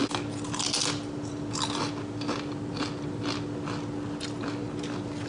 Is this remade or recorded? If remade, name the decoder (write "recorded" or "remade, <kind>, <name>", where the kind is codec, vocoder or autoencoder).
recorded